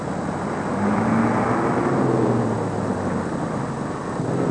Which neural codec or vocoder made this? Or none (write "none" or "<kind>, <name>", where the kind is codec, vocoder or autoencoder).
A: none